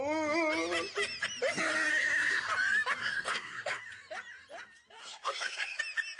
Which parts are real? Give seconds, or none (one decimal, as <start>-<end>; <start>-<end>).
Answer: 0.0-1.9; 2.5-3.0; 3.8-5.0; 5.8-6.2